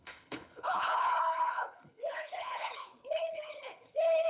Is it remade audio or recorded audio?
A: remade